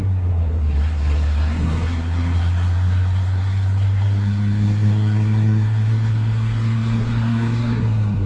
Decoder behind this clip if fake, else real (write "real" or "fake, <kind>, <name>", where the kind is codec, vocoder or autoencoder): fake, codec, SNAC